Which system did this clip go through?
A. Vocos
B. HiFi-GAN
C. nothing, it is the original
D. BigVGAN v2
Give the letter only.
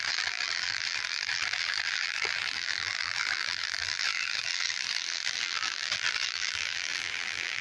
D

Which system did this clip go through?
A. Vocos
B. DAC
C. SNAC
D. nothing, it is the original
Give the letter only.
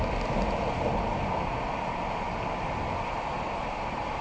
D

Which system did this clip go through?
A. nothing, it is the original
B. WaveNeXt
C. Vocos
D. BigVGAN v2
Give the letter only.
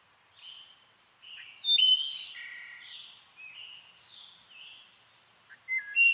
A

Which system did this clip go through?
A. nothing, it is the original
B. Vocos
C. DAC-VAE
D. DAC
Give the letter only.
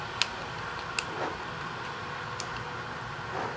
A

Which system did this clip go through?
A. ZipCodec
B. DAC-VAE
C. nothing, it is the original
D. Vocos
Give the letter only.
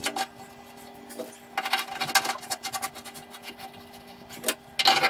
C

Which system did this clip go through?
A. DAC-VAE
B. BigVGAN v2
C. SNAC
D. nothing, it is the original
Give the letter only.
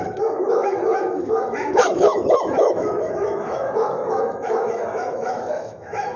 A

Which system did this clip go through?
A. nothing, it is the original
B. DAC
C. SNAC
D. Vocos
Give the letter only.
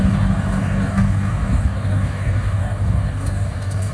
B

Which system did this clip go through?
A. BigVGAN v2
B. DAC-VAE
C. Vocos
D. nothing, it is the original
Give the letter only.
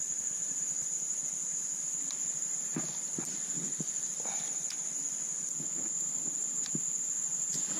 D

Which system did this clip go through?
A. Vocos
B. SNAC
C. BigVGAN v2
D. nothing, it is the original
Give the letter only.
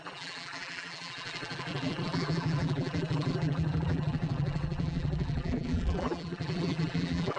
C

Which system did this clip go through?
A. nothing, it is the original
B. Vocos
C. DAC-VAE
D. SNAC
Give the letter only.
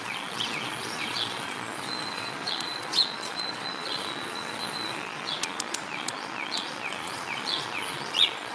B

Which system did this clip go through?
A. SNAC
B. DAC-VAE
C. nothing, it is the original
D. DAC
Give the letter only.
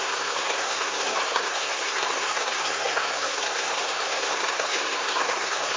A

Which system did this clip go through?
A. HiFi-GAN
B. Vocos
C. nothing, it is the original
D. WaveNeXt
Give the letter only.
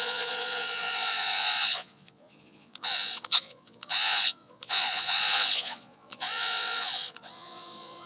B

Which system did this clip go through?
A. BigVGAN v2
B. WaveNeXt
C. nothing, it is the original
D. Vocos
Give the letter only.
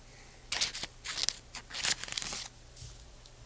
C